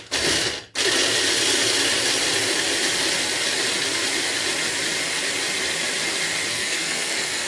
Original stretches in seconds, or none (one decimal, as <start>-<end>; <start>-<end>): 0.0-6.5